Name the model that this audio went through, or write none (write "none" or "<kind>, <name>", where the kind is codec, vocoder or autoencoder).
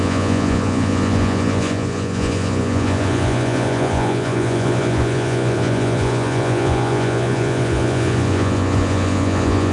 vocoder, Vocos